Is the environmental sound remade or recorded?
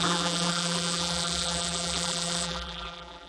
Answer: remade